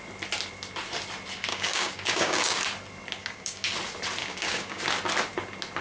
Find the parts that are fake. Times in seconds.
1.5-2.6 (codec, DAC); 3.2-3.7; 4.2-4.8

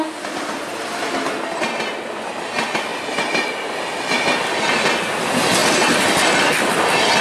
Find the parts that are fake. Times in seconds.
2.9-4.1 (vocoder, BigVGAN v2); 5.6-6.7

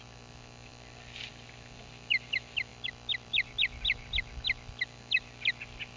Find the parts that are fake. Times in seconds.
2.7-3.3 (vocoder, BigVGAN v2)

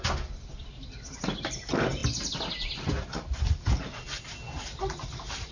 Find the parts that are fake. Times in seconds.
none

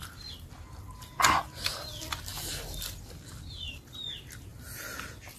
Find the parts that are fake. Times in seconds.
none

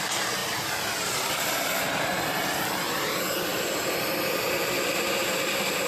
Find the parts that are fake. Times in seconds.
0.4-2.3 (vocoder, BigVGAN v2); 3.5-4.1